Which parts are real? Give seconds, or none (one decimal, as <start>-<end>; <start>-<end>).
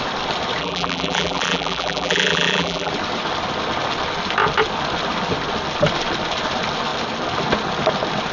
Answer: 0.0-0.6; 2.9-8.3